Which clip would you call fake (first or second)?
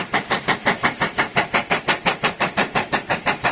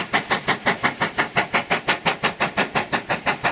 first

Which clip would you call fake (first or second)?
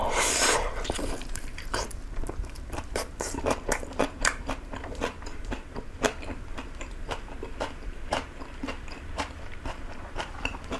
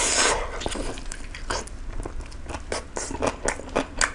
first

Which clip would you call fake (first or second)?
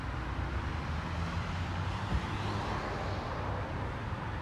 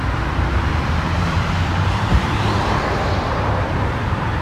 second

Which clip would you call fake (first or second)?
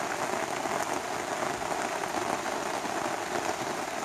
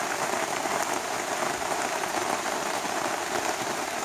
second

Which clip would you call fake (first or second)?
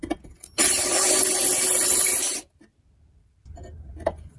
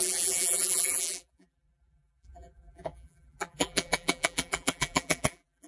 second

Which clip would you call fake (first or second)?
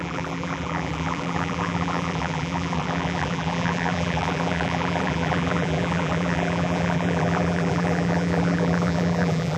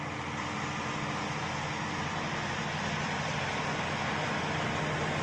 first